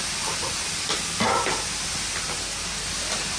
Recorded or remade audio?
recorded